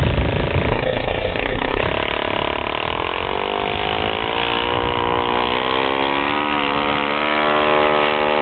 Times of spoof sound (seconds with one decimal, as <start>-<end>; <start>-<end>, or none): 0.7-1.8